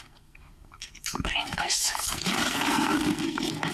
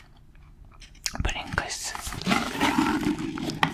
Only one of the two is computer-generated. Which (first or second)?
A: first